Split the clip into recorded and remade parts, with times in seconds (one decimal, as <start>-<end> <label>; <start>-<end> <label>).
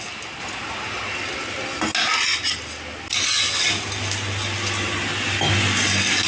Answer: 0.0-6.3 recorded